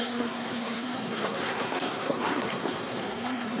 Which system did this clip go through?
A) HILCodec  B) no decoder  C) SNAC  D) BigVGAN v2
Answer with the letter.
C